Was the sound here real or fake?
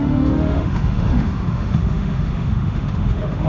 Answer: fake